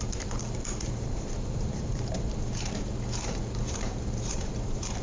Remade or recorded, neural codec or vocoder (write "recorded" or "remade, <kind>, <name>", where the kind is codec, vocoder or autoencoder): remade, vocoder, BigVGAN v2